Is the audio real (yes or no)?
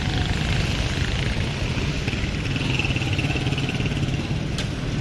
yes